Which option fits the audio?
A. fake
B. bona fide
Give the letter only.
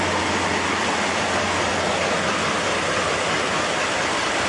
B